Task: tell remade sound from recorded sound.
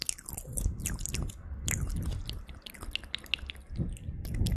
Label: recorded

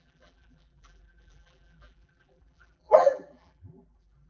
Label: remade